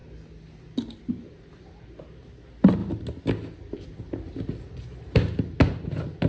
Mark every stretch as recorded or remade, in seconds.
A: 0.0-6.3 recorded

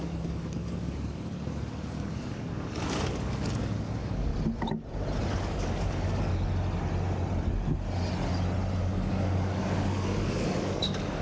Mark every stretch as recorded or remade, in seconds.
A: 0.0-4.3 remade; 4.3-5.4 recorded; 5.4-6.3 remade; 6.3-8.8 recorded; 8.8-11.2 remade

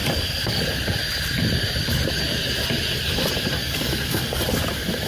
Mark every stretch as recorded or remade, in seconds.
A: 0.0-3.6 recorded; 3.6-4.4 remade; 4.4-5.1 recorded

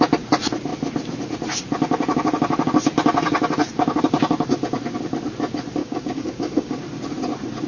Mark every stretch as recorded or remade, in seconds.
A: 0.0-5.8 recorded; 5.8-6.8 remade; 6.8-7.7 recorded

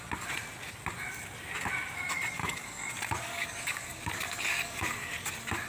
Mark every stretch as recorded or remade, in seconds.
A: 0.0-2.4 recorded; 2.4-2.9 remade; 2.9-3.3 recorded; 3.3-5.1 remade; 5.1-5.7 recorded

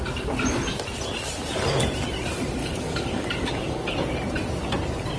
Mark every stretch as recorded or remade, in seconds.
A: 0.0-2.6 recorded; 2.6-3.9 remade; 3.9-5.2 recorded

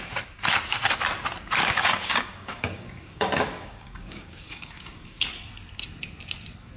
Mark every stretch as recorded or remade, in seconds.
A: 0.0-1.6 recorded; 1.6-5.2 remade; 5.2-6.8 recorded